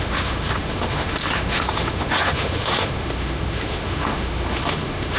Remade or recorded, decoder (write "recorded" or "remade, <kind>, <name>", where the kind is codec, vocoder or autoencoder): remade, autoencoder, DAC-VAE